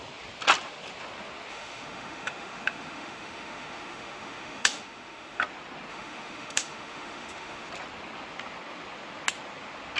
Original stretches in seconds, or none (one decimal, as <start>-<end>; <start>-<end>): 0.0-1.5; 5.4-5.9; 7.7-10.0